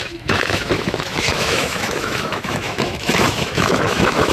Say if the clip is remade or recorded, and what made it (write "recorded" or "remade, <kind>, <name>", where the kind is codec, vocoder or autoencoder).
remade, autoencoder, DAC-VAE